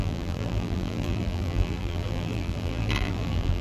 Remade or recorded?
remade